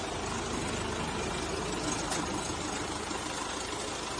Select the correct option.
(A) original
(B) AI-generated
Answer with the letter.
A